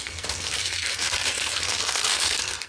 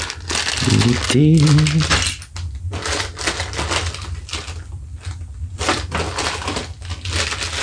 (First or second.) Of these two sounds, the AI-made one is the first